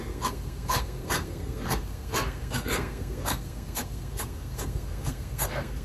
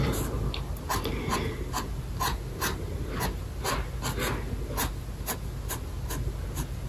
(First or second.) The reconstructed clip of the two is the first